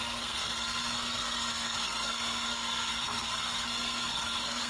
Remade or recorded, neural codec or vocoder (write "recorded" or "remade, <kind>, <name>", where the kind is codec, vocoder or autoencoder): remade, codec, SNAC